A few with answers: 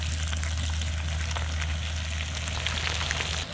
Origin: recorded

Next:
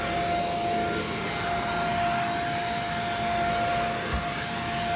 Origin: recorded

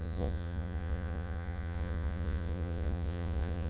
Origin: remade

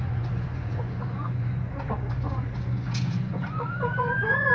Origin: remade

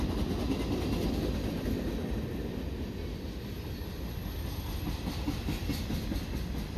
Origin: recorded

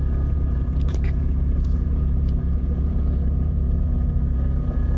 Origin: remade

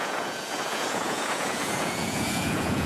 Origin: remade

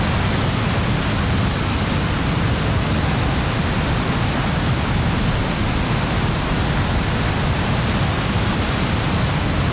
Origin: recorded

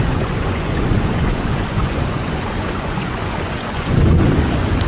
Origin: remade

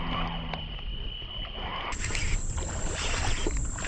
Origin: recorded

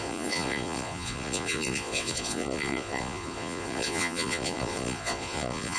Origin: remade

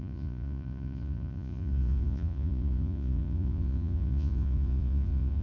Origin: remade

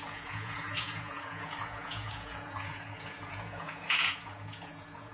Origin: remade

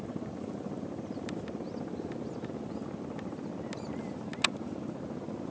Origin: recorded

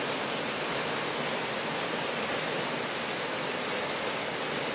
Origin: recorded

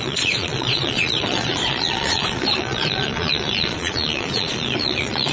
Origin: remade